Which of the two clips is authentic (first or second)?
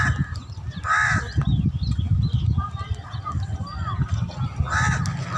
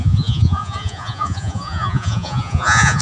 first